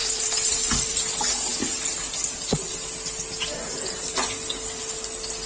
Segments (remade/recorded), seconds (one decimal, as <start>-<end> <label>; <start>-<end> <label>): 0.0-1.0 remade; 1.0-5.5 recorded